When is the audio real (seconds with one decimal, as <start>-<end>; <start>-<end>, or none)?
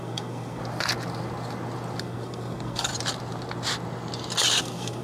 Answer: 0.6-2.0; 2.9-4.6